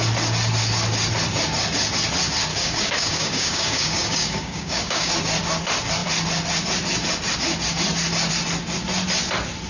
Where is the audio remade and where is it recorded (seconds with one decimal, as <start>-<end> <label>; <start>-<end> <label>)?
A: 0.0-2.5 recorded; 2.5-5.1 remade; 5.1-9.7 recorded